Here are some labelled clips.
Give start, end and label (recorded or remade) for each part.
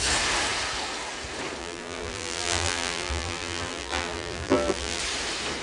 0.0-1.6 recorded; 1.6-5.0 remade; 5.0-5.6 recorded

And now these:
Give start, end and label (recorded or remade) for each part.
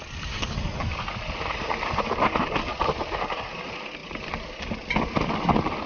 0.0-5.9 recorded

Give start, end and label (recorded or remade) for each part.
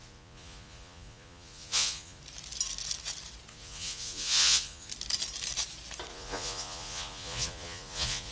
0.0-2.2 remade; 2.2-3.5 recorded; 3.5-4.9 remade; 4.9-6.1 recorded; 6.1-8.3 remade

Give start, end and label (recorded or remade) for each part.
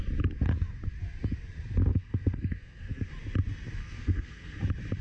0.0-1.9 recorded; 1.9-3.1 remade; 3.1-3.8 recorded; 3.8-4.6 remade; 4.6-5.0 recorded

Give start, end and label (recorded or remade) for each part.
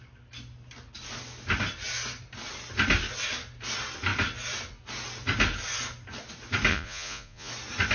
0.0-6.7 recorded; 6.7-7.5 remade; 7.5-7.9 recorded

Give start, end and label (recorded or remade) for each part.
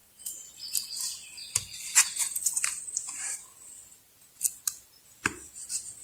0.0-6.0 recorded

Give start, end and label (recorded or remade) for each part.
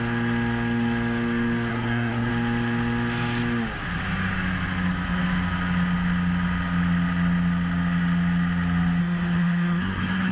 0.0-1.7 recorded; 1.7-2.3 remade; 2.3-9.0 recorded; 9.0-10.3 remade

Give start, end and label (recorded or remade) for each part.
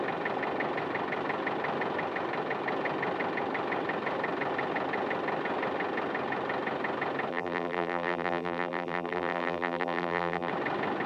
0.0-7.3 recorded; 7.3-10.5 remade; 10.5-11.1 recorded